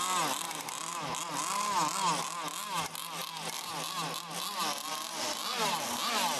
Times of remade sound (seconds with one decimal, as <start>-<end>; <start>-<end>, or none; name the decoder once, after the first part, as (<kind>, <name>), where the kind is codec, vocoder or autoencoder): none